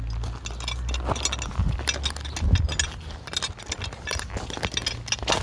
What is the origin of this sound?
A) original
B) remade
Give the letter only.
A